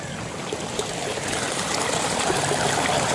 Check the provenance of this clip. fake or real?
real